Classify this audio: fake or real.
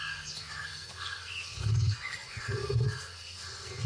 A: fake